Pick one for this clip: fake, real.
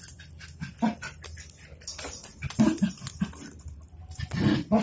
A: real